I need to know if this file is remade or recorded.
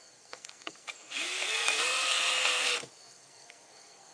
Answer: remade